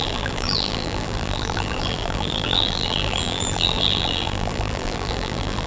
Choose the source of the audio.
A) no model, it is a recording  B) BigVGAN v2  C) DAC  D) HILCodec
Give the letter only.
B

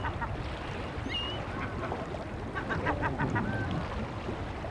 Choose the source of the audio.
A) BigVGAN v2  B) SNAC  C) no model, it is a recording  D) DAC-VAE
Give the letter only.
C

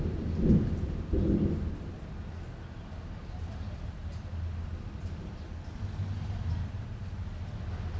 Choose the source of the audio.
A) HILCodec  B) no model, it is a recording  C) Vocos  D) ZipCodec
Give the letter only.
B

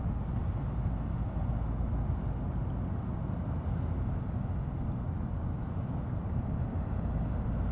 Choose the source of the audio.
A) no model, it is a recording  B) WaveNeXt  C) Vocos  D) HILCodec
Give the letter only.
A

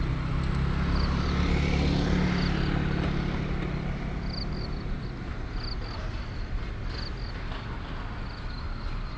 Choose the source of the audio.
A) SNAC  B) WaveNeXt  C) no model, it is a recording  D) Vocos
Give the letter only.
C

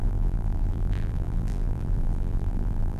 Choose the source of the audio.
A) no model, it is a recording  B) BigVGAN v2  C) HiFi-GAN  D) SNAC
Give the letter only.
B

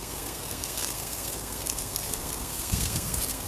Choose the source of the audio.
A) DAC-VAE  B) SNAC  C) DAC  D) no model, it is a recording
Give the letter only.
B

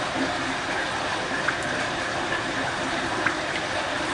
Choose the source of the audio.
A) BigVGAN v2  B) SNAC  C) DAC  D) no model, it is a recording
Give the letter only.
D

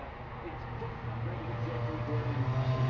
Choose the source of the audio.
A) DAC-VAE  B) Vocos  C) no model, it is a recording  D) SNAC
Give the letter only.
C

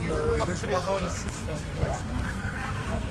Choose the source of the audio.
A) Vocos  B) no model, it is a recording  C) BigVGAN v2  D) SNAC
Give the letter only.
D